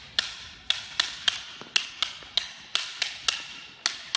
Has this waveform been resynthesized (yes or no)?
no